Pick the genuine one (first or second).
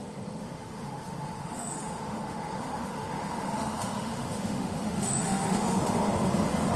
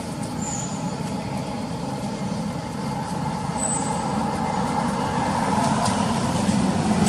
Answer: second